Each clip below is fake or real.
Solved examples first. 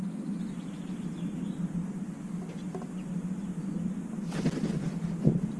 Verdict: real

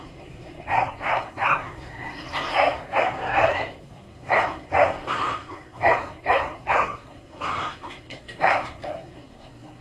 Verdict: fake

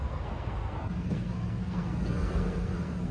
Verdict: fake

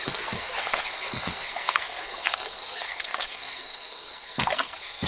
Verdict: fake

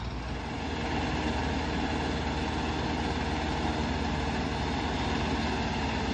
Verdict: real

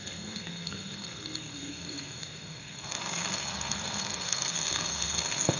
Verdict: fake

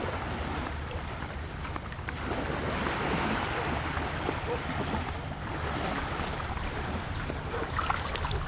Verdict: real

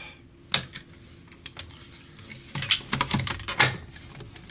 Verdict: real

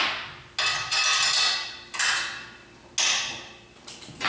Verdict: real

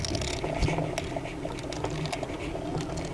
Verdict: real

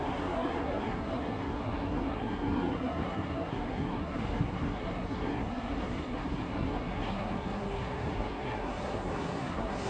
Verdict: fake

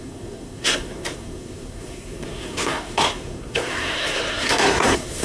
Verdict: fake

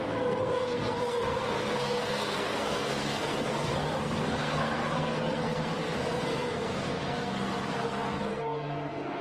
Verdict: fake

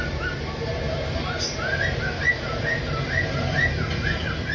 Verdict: real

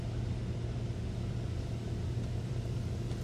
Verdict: real